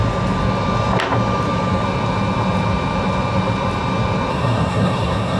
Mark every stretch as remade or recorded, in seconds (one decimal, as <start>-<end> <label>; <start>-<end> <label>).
0.0-4.3 recorded; 4.3-5.4 remade

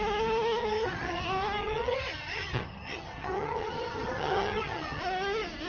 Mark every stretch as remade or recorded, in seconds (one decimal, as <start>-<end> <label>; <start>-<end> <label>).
0.0-0.6 recorded; 0.6-1.2 remade; 1.2-1.6 recorded; 1.6-5.0 remade; 5.0-5.7 recorded

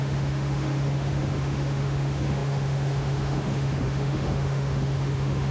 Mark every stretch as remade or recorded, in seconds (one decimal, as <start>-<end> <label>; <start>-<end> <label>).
0.0-5.5 remade

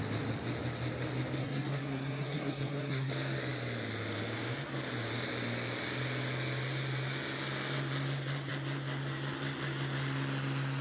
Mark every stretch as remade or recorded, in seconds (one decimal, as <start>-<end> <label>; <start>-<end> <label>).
0.0-1.4 recorded; 1.4-3.1 remade; 3.1-10.8 recorded